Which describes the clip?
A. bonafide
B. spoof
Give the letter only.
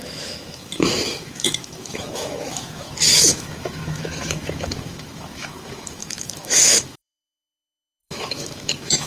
B